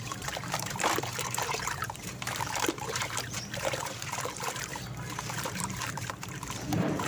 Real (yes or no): no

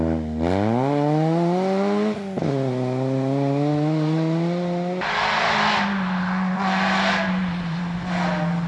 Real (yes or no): yes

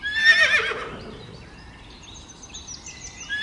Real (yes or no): yes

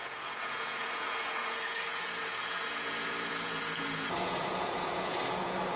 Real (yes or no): no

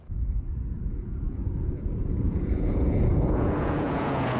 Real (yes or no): no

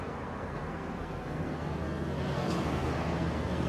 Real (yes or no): no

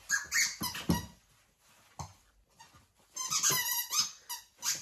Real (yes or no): yes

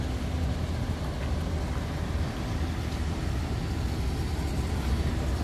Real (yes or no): yes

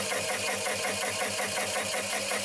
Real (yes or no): yes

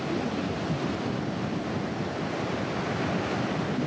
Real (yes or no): yes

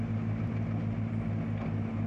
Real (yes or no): yes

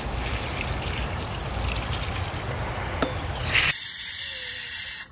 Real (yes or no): no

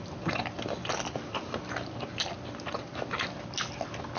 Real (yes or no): yes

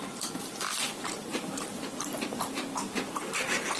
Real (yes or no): no